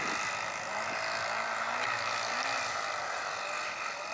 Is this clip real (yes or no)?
yes